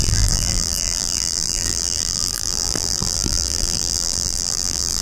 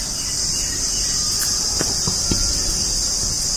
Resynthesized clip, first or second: first